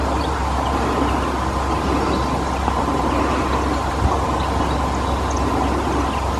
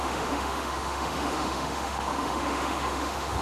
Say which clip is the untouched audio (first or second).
first